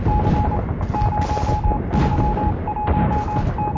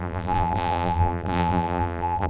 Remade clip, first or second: second